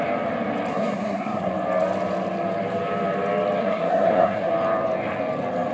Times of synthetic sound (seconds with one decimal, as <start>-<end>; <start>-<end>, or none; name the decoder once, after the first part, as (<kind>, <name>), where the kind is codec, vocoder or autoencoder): 0.7-1.5 (codec, SNAC); 3.6-4.5